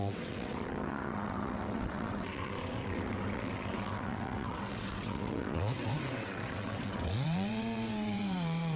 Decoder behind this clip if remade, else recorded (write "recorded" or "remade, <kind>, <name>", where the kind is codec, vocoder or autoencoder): remade, vocoder, WaveNeXt